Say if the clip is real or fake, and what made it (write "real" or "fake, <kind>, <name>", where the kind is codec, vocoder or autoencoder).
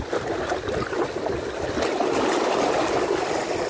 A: real